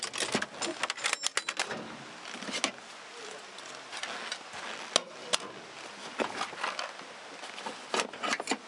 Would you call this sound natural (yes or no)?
yes